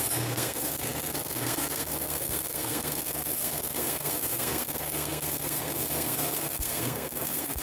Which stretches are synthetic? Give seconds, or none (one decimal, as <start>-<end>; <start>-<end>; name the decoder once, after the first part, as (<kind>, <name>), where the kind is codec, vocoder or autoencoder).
0.0-7.6 (codec, SNAC)